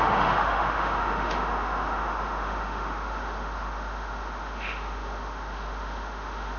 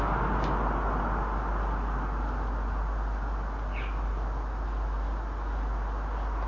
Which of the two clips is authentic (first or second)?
second